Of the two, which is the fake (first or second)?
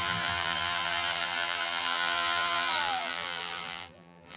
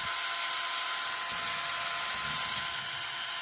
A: first